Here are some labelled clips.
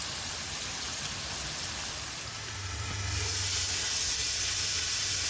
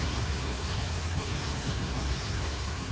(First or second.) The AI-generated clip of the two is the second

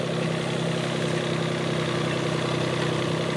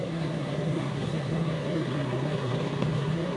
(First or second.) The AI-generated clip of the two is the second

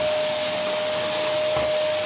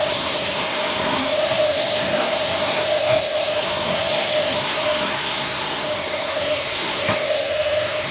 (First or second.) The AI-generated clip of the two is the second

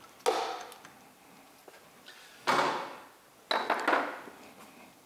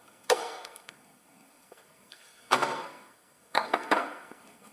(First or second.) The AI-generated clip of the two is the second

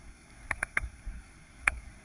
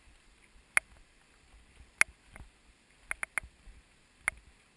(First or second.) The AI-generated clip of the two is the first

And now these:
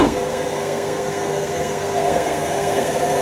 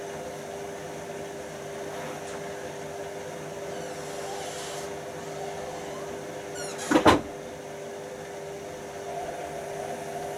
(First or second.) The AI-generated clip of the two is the first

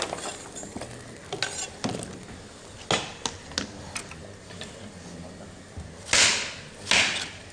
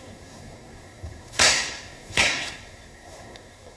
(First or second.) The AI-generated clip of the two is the second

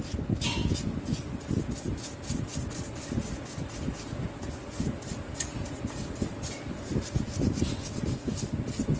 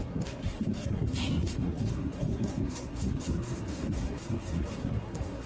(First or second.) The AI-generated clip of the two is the second